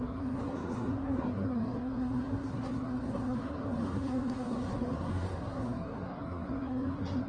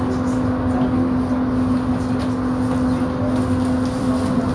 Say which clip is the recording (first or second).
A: second